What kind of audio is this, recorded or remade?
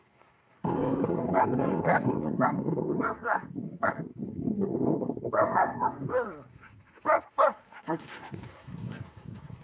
remade